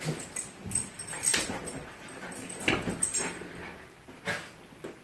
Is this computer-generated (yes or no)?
no